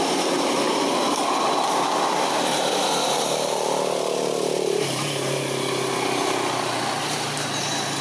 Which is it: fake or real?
real